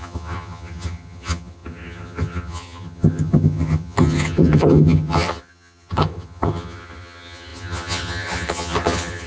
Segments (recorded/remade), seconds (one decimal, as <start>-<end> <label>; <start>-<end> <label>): 0.0-9.3 remade